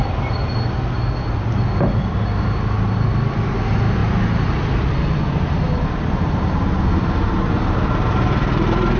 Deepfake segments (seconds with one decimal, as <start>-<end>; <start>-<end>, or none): none